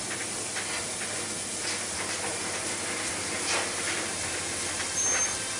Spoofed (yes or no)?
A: no